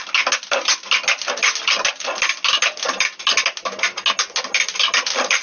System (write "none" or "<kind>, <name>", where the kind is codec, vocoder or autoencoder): none